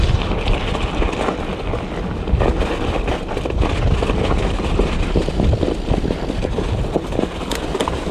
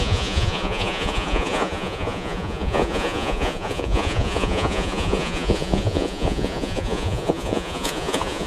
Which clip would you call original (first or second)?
first